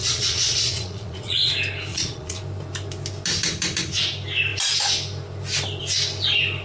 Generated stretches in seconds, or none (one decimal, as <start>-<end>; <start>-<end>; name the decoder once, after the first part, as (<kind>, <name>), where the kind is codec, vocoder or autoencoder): 0.0-1.5 (vocoder, Vocos); 1.9-2.4